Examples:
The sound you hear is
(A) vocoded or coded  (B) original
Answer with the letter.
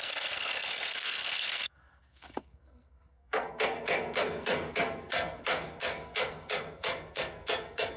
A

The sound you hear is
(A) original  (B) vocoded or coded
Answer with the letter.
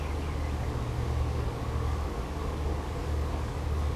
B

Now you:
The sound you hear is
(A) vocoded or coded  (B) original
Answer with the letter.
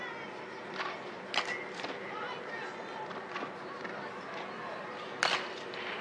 B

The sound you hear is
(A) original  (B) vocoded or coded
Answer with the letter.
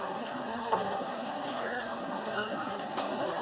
B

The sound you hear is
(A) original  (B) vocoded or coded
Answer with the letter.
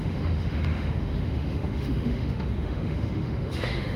B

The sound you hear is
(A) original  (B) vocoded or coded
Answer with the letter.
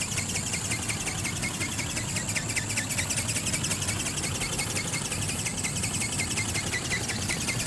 A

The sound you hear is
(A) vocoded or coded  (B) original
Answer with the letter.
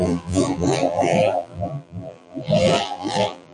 A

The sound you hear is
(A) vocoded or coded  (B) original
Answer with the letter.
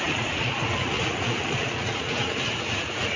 A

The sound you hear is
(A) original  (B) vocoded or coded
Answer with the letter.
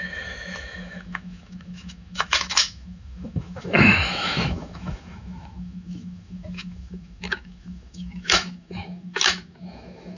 B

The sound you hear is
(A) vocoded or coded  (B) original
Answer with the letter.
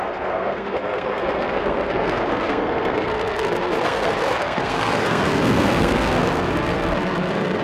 A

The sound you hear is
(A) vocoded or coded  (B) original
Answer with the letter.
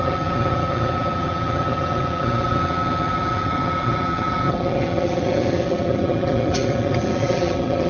A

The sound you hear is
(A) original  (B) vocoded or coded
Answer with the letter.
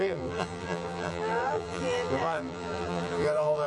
B